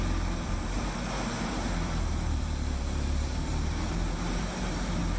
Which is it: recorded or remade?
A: remade